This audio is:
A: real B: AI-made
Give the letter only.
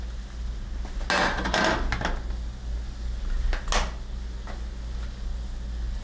A